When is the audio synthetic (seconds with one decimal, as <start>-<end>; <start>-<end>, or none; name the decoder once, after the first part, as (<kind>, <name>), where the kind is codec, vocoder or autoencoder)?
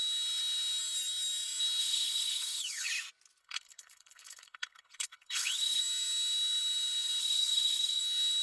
1.8-2.9 (codec, HILCodec); 3.4-5.8; 7.2-8.0